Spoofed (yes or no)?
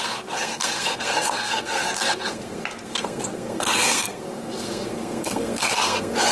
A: yes